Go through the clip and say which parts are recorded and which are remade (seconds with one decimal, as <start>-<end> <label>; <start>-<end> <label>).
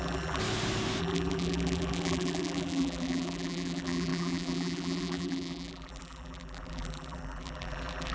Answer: 0.0-0.4 remade; 0.4-1.0 recorded; 1.0-8.1 remade